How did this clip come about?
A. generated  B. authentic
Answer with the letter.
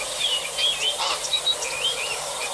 B